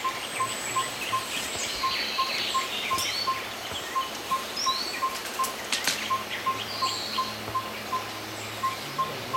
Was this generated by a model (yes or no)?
no